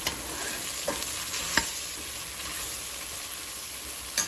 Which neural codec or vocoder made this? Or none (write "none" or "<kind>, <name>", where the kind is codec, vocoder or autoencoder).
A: none